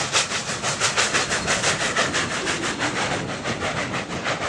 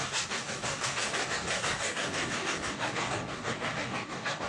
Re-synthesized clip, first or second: second